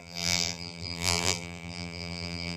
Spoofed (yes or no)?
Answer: yes